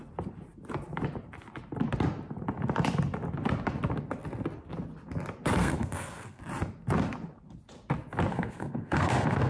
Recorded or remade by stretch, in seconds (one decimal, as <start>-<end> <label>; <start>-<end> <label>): 0.0-5.6 recorded; 5.6-6.4 remade; 6.4-8.3 recorded; 8.3-9.5 remade